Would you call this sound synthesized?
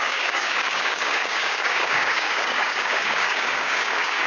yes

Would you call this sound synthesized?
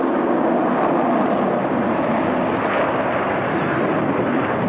no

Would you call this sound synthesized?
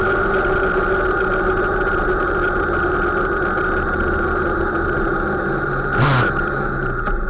no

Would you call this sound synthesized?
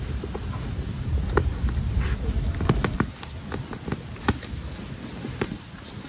no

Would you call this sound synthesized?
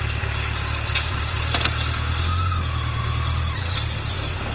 no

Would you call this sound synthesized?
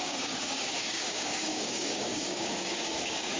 yes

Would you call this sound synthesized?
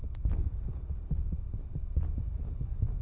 no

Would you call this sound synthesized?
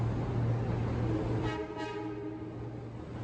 no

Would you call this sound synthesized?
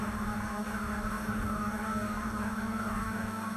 yes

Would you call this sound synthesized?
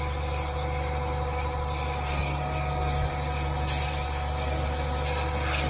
no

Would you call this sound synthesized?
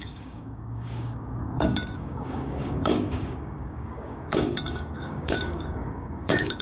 yes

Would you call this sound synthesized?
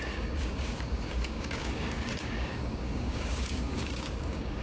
yes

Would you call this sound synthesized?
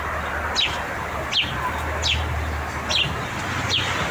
no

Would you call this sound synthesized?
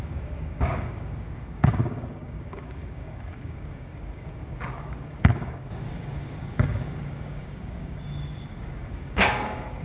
yes